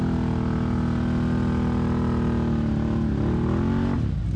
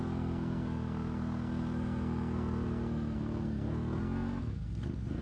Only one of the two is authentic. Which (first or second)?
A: first